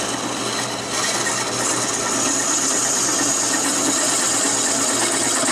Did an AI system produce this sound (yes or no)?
no